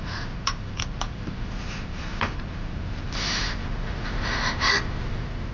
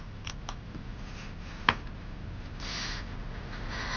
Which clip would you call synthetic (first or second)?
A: first